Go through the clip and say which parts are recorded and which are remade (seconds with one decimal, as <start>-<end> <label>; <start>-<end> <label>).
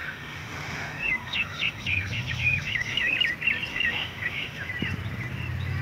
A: 0.0-3.1 remade; 3.1-3.7 recorded; 3.7-4.7 remade; 4.7-5.8 recorded